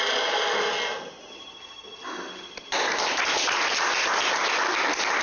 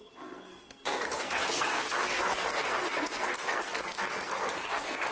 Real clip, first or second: first